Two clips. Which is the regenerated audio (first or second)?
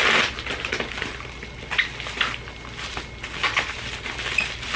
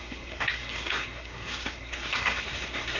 second